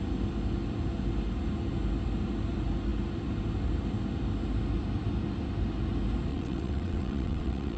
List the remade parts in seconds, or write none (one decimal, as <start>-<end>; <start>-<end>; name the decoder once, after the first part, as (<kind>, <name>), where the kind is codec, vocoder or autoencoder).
6.3-7.8 (vocoder, WaveNeXt)